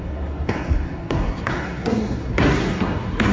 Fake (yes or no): yes